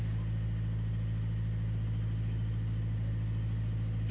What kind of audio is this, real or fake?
real